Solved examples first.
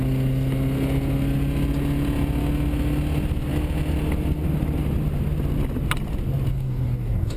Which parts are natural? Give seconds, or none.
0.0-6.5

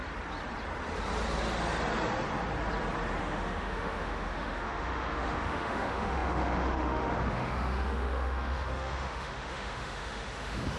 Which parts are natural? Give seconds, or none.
0.0-3.2

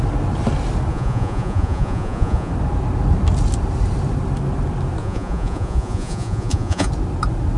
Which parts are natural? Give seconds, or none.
0.0-0.9; 2.5-5.0; 6.9-7.6

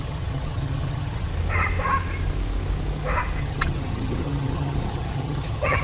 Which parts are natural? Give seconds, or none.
1.3-3.4

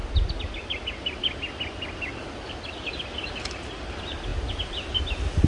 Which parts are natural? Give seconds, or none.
0.0-5.5

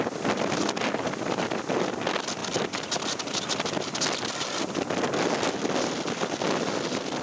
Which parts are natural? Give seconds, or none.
0.0-7.2

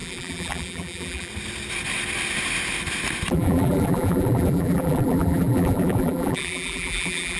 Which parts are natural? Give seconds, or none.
1.3-3.3